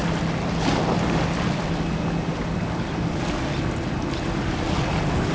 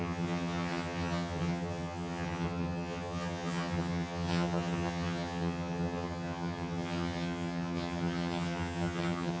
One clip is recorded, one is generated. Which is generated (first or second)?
second